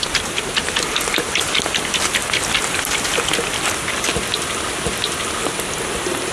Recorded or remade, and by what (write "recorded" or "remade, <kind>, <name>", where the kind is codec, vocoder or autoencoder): recorded